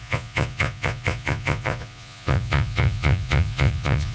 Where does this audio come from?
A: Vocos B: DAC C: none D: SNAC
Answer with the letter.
A